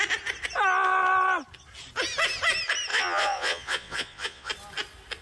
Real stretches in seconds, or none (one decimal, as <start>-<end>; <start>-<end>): 0.0-2.9; 4.5-5.2